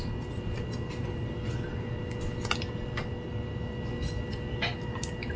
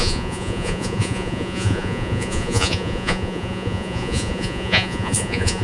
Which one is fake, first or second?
second